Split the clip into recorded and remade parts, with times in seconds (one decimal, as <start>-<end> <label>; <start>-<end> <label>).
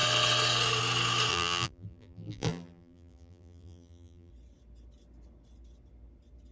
0.0-1.3 recorded; 1.3-4.3 remade; 4.3-6.5 recorded